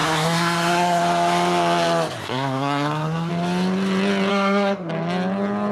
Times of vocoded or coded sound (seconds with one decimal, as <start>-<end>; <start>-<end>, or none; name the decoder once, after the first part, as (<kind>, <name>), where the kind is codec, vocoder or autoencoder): 0.0-1.0 (codec, SNAC); 2.2-3.3; 4.3-4.9